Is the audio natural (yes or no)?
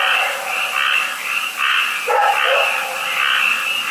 yes